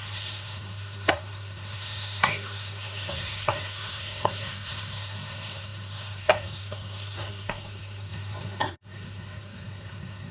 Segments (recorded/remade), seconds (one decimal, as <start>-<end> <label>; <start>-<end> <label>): 0.0-10.3 remade